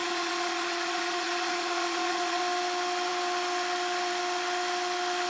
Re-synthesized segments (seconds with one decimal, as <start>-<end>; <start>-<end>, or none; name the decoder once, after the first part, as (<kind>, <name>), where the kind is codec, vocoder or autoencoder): 0.0-2.4 (vocoder, Vocos)